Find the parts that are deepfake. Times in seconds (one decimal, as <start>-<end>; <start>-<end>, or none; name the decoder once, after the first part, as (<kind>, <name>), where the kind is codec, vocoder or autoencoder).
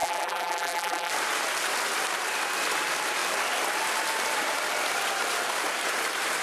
0.0-1.1 (vocoder, BigVGAN v2)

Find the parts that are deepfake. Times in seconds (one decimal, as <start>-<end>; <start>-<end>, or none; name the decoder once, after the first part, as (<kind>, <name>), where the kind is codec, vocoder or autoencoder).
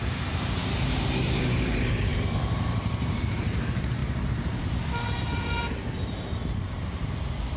0.0-0.6 (vocoder, BigVGAN v2); 1.2-4.0; 4.6-7.6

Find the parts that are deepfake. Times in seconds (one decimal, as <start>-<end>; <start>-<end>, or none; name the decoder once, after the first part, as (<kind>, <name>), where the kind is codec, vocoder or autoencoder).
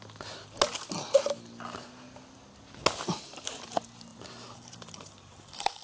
4.1-5.8 (vocoder, BigVGAN v2)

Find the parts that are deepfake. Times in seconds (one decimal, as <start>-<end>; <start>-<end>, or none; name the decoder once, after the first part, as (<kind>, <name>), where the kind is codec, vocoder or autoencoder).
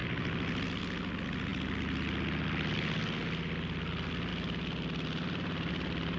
none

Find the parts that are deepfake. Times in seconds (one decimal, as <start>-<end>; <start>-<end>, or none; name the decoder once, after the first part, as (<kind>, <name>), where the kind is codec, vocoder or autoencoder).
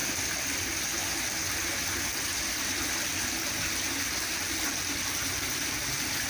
none